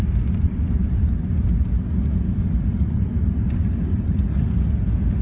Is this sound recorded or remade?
recorded